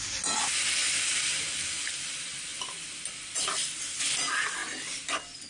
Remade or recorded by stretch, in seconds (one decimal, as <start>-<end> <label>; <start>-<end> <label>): 0.0-5.5 recorded

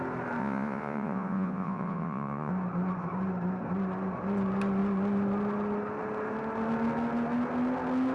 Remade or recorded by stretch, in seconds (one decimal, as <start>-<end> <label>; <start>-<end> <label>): 0.0-0.4 recorded; 0.4-2.5 remade; 2.5-8.1 recorded

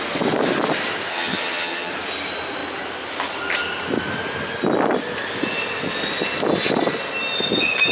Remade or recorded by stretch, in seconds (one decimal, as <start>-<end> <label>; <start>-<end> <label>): 0.0-1.1 recorded; 1.1-1.9 remade; 1.9-7.9 recorded

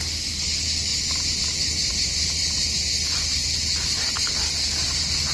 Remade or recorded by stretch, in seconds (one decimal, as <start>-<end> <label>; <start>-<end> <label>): 0.0-5.3 recorded

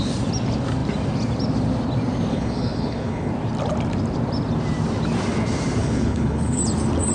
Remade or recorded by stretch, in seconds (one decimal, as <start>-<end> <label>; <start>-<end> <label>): 0.0-2.3 recorded; 2.3-3.3 remade; 3.3-5.8 recorded; 5.8-6.6 remade; 6.6-7.1 recorded

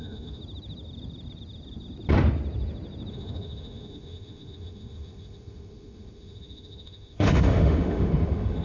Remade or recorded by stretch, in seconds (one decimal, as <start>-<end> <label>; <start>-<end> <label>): 0.0-0.4 remade; 0.4-3.1 recorded; 3.1-8.6 remade

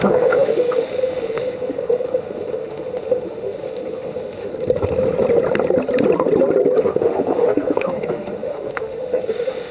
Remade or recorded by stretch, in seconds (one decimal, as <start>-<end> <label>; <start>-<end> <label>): 0.0-4.5 remade; 4.5-6.8 recorded; 6.8-9.7 remade

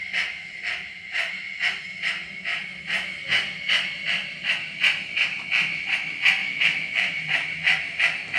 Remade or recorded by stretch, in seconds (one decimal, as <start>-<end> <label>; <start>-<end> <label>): 0.0-6.4 recorded; 6.4-7.2 remade; 7.2-8.4 recorded